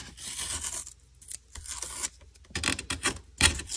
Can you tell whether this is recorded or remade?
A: recorded